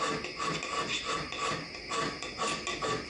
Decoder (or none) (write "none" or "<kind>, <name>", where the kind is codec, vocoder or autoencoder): none